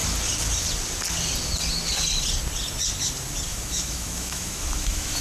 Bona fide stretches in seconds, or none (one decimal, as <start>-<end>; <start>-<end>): 0.0-3.5